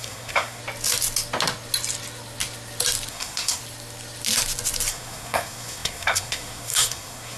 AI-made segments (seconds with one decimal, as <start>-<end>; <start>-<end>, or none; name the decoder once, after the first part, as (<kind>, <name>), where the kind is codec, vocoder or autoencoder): 0.0-0.6 (codec, SNAC); 3.1-3.6; 4.9-7.4